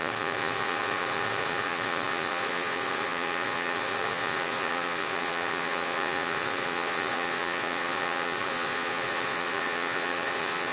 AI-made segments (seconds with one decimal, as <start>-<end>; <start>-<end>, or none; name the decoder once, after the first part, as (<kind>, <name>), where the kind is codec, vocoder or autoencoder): 0.0-10.7 (vocoder, Vocos)